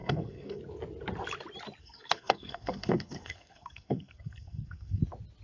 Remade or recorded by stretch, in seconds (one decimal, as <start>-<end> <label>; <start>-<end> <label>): 0.0-0.6 remade; 0.6-1.8 recorded; 1.8-5.0 remade; 5.0-5.4 recorded